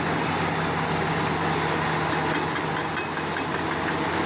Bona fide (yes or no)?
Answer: yes